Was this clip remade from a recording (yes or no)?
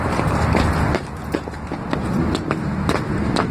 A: no